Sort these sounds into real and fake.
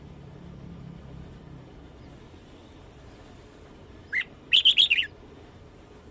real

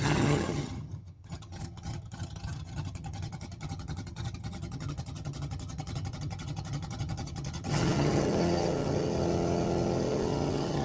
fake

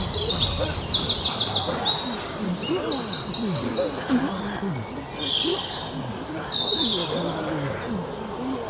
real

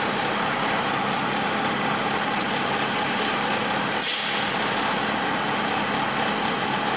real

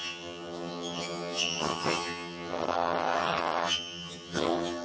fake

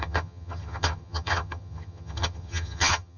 fake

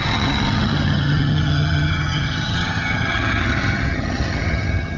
fake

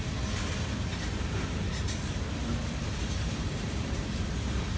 real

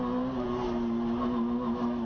real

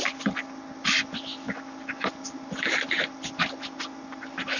real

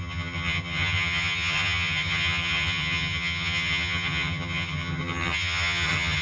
fake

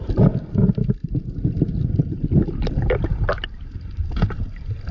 real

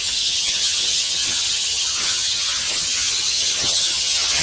fake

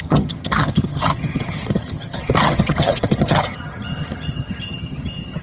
fake